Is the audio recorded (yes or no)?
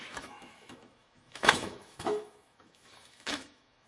no